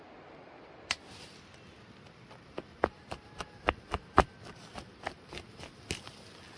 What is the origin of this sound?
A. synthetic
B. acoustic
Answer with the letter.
B